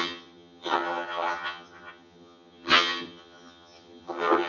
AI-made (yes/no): yes